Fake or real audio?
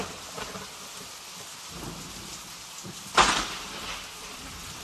real